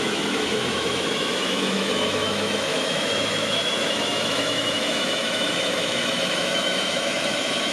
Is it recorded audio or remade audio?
remade